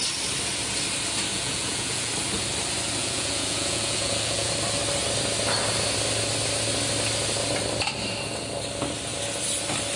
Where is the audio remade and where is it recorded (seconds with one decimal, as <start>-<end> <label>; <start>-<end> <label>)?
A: 0.0-1.3 recorded; 1.3-2.1 remade; 2.1-3.0 recorded; 3.0-4.5 remade; 4.5-10.0 recorded